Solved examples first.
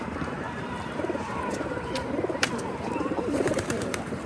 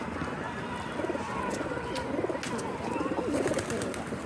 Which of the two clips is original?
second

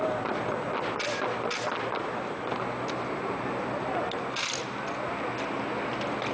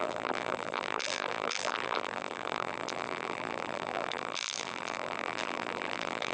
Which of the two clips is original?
first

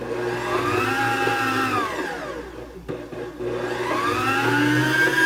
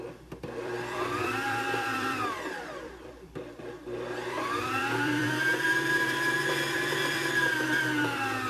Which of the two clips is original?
first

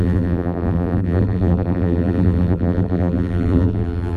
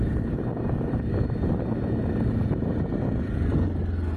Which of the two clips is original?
second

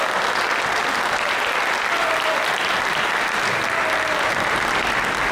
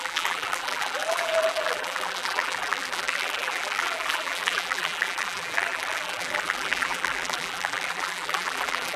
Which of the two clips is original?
first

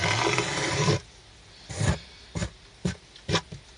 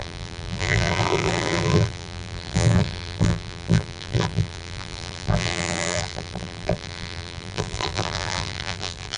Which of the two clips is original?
first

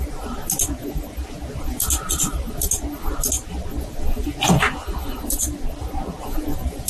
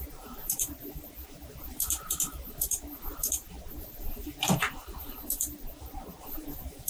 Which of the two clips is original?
first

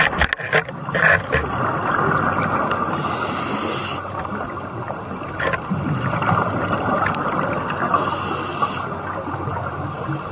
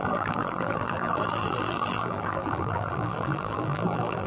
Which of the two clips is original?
first